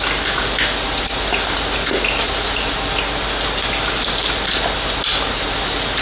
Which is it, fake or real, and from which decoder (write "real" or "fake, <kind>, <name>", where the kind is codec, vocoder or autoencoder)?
real